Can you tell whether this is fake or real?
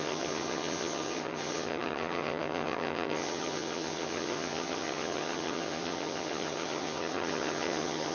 fake